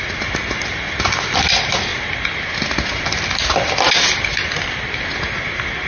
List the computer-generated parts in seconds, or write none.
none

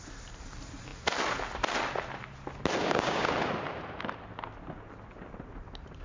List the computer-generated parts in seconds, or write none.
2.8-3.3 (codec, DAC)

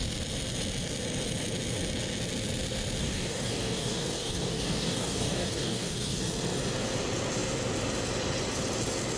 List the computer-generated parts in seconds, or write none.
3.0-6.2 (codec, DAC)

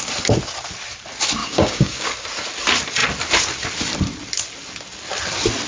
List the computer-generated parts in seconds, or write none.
1.4-2.1 (codec, DAC)

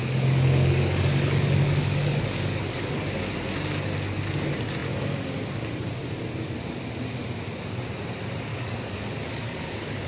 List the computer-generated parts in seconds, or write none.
0.0-3.2 (codec, DAC); 8.5-10.1

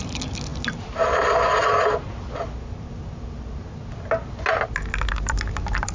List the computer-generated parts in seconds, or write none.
none

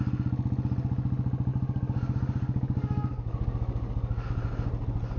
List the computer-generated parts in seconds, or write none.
1.5-4.3 (codec, DAC)